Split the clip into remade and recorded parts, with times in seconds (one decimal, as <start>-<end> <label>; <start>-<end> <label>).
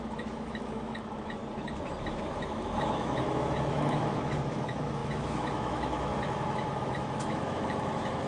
0.0-1.4 remade; 1.4-2.1 recorded; 2.1-8.3 remade